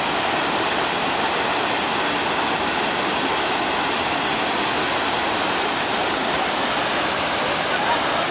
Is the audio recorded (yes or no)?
yes